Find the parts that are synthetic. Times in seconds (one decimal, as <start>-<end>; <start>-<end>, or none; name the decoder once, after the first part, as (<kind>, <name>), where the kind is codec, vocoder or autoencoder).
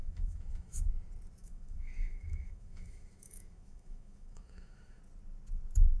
0.0-0.9 (autoencoder, DAC-VAE); 1.4-5.0